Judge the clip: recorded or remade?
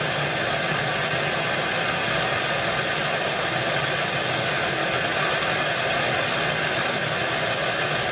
recorded